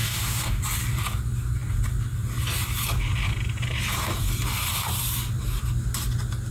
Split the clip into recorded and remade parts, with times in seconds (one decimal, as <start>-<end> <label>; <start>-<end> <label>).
0.0-0.6 remade; 0.6-6.5 recorded